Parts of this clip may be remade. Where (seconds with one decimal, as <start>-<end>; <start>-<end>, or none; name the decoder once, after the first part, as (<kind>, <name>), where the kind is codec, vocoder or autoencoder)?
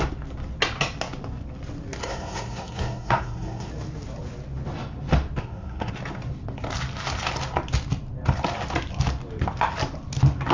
2.0-3.7 (codec, SNAC); 5.4-5.9